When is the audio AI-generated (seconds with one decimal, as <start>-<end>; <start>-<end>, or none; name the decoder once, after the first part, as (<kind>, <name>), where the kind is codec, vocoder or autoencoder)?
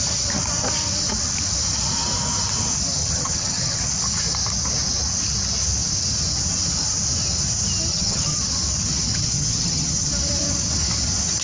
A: 3.0-3.8 (vocoder, HiFi-GAN); 7.9-8.4; 9.1-10.1